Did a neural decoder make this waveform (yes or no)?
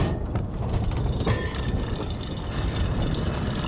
no